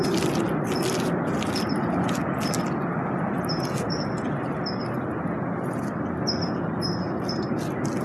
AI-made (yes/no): no